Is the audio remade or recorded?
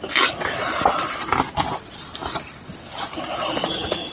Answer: recorded